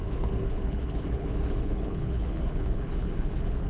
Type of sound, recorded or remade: remade